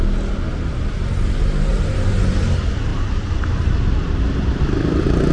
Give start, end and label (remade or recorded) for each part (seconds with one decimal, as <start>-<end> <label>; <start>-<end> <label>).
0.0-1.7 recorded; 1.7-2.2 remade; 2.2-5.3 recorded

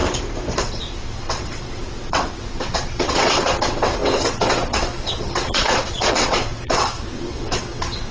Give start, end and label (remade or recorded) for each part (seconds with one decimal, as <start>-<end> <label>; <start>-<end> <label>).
0.0-0.6 recorded; 0.6-8.1 remade

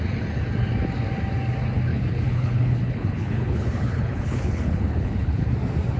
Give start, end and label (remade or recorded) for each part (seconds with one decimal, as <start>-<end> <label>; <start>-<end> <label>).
0.0-1.9 recorded; 1.9-5.5 remade; 5.5-6.0 recorded

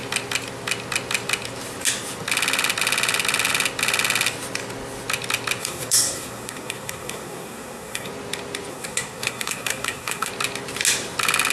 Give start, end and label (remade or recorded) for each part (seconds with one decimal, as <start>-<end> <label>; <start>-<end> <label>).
0.0-5.6 recorded; 5.6-8.1 remade; 8.1-8.7 recorded; 8.7-10.3 remade; 10.3-11.5 recorded

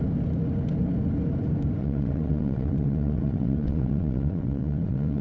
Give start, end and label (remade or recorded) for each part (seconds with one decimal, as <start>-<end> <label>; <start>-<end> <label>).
0.0-1.8 recorded; 1.8-5.2 remade

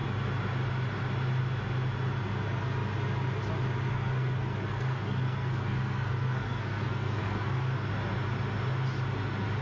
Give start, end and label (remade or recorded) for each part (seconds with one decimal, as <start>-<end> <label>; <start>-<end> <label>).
0.0-3.9 recorded; 3.9-7.9 remade; 7.9-9.6 recorded